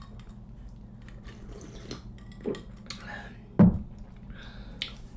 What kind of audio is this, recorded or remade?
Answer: recorded